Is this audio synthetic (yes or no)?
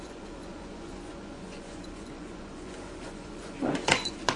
yes